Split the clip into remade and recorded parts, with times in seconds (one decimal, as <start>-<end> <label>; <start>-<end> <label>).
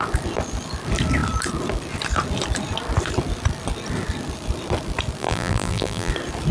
0.0-5.2 recorded; 5.2-6.1 remade; 6.1-6.5 recorded